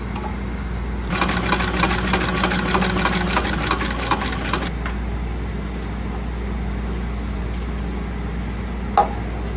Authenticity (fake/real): real